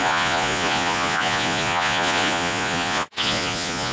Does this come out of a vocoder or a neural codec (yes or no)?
yes